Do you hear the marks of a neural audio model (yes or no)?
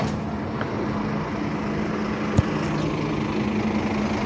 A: no